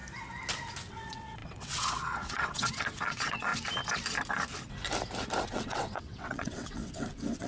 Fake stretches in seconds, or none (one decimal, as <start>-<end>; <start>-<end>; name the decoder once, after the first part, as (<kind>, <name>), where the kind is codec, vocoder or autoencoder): 0.9-3.5 (vocoder, WaveNeXt); 5.5-7.5

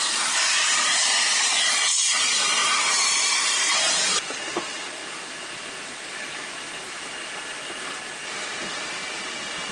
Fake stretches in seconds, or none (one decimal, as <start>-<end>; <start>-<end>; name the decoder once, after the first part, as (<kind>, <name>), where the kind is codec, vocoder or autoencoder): 0.0-2.6 (vocoder, BigVGAN v2); 3.8-7.1

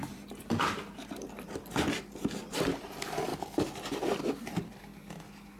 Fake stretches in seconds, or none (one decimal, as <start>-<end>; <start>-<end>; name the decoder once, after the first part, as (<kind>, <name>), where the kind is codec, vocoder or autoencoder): 0.0-1.3 (vocoder, BigVGAN v2)

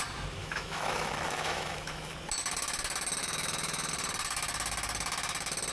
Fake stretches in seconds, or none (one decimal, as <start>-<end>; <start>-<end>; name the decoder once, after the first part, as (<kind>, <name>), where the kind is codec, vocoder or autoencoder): 0.4-2.1 (autoencoder, DAC-VAE); 3.2-3.9

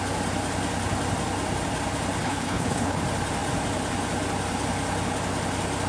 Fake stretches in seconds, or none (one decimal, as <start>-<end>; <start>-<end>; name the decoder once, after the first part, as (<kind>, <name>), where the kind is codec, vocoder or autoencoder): 2.2-3.0 (codec, HILCodec)

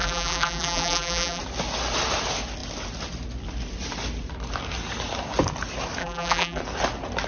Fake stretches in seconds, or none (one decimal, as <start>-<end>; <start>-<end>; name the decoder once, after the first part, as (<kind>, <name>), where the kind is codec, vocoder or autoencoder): 0.0-1.4 (vocoder, BigVGAN v2); 6.0-6.6